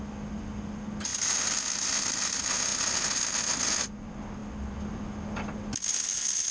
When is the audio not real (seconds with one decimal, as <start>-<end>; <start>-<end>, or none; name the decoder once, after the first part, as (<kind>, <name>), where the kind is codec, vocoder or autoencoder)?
none